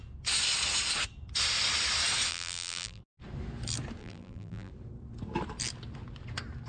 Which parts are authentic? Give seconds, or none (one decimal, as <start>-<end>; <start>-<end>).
0.0-2.3; 3.0-4.0; 4.7-6.7